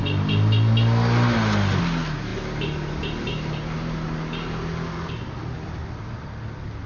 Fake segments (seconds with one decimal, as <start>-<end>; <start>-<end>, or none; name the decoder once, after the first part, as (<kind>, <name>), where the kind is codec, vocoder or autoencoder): none

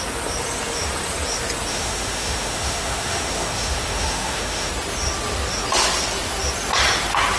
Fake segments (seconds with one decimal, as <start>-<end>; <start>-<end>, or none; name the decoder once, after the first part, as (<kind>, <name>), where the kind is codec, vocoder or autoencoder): 1.7-4.7 (autoencoder, DAC-VAE)

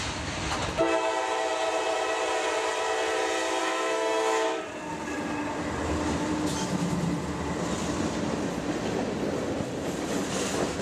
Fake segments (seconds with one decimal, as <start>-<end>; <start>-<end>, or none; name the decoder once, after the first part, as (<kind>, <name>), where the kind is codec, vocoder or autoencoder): 3.6-4.6 (autoencoder, DAC-VAE)

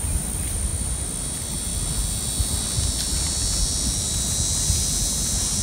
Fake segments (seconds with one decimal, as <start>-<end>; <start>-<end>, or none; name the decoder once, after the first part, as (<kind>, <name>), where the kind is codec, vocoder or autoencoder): none